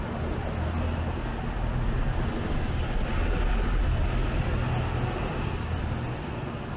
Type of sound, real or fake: real